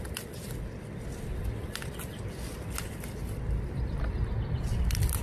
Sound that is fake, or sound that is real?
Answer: real